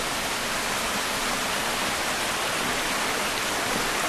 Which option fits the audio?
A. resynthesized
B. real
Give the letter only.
B